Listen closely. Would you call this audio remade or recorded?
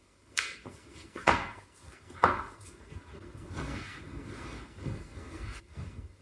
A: remade